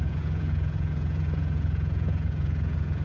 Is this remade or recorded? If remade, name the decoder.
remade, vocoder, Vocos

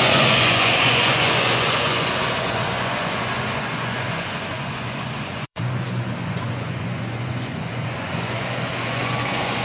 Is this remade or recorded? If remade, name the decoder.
remade, vocoder, Vocos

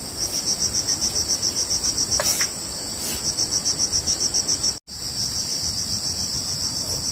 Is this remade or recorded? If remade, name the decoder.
recorded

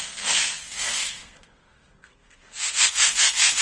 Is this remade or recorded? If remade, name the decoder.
remade, codec, SNAC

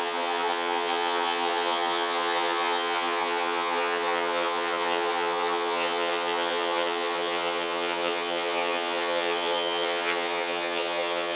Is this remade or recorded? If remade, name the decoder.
remade, vocoder, HiFi-GAN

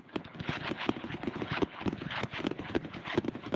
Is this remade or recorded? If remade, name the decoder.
remade, codec, HILCodec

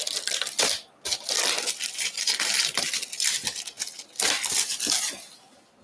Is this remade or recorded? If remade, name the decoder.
recorded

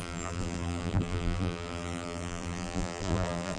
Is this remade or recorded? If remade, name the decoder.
remade, vocoder, BigVGAN v2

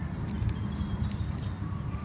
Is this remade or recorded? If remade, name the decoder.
recorded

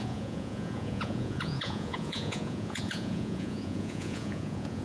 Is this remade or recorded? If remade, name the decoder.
remade, vocoder, Vocos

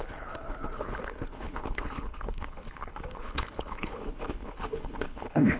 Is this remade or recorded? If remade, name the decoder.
remade, codec, HILCodec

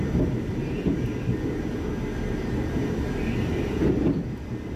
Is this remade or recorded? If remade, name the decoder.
recorded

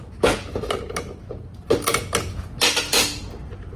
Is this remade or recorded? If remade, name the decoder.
recorded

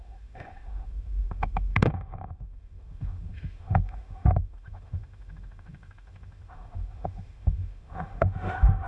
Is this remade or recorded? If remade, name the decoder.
remade, autoencoder, DAC-VAE